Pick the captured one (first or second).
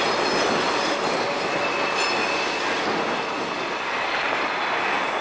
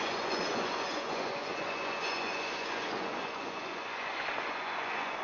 first